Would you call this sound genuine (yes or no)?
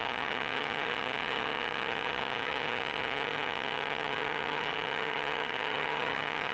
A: no